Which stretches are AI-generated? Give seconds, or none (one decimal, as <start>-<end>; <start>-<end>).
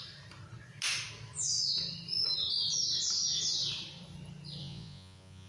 4.6-5.5